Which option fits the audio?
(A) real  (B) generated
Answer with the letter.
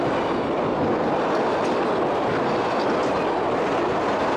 A